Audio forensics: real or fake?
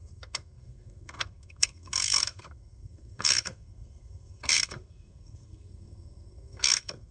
fake